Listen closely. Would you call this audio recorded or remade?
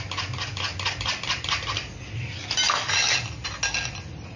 recorded